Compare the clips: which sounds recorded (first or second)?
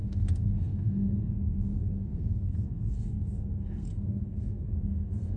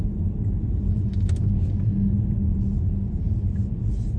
second